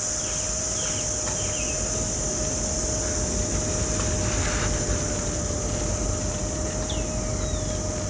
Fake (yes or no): no